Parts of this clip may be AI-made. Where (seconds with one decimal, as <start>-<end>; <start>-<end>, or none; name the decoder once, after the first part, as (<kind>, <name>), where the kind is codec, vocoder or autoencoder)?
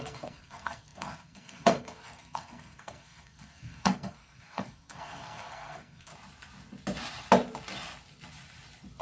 0.0-6.1 (codec, SNAC)